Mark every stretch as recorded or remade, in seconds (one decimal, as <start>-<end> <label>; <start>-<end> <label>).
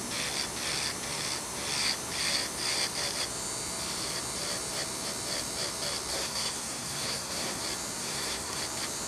0.0-6.1 recorded; 6.1-7.6 remade; 7.6-8.0 recorded; 8.0-8.6 remade; 8.6-9.1 recorded